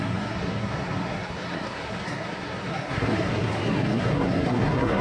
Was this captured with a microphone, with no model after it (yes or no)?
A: no